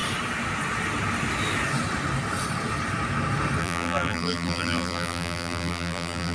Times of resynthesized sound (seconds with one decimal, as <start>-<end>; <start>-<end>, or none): 3.6-6.3

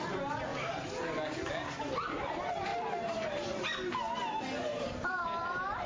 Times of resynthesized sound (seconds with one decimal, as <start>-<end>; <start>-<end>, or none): 4.7-5.9

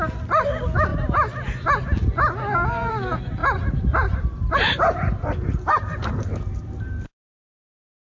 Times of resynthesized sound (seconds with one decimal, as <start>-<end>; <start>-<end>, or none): 3.4-8.2

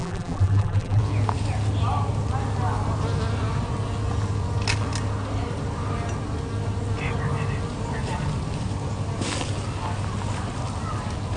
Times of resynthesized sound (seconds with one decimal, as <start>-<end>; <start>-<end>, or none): 0.0-1.0

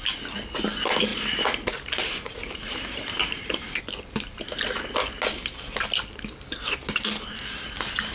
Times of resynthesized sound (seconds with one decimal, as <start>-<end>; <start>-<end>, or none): 1.1-3.8